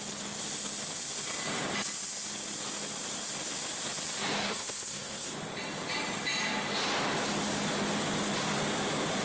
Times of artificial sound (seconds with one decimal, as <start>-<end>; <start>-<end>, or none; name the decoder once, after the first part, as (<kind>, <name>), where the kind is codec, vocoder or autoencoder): 4.4-5.3 (codec, SNAC)